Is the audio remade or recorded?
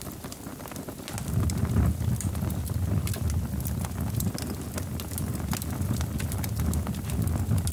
recorded